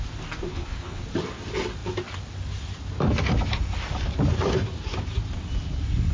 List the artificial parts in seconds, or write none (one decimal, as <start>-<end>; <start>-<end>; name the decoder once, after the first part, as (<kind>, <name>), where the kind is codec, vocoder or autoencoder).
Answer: 0.5-1.0 (codec, HILCodec)